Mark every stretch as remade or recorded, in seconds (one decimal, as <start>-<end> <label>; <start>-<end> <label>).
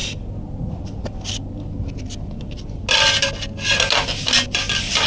0.0-5.1 recorded